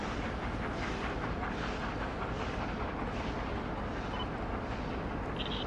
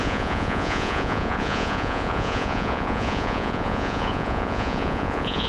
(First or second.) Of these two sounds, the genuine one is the first